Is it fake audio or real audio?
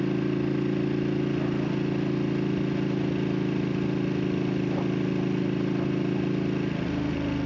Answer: real